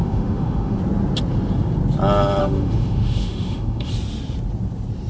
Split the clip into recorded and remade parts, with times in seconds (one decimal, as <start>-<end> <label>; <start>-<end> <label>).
0.0-0.8 remade; 0.8-2.4 recorded; 2.4-3.9 remade; 3.9-5.1 recorded